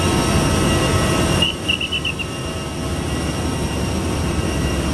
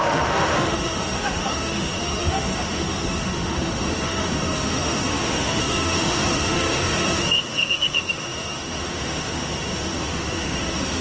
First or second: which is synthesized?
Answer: second